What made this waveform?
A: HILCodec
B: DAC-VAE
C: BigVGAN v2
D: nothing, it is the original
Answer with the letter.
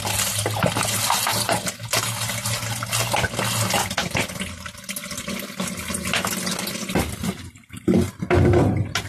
D